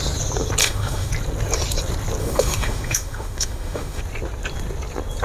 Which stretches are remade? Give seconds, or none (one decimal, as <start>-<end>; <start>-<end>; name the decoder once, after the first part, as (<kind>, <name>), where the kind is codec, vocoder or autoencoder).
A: 0.6-1.1 (autoencoder, DAC-VAE); 2.2-4.0